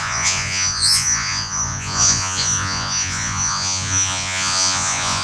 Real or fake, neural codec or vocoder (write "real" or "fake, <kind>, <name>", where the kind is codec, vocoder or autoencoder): fake, vocoder, Vocos